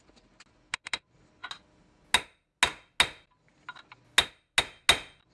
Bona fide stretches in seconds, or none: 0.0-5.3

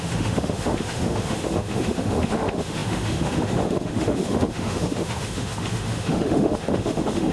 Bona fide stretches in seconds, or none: none